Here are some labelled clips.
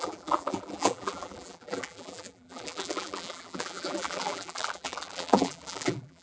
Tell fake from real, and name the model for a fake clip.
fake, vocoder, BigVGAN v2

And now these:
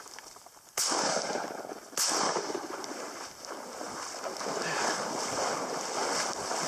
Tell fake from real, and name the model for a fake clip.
real